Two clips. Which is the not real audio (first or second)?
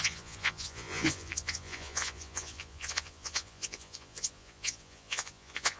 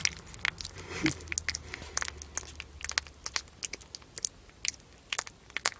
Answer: first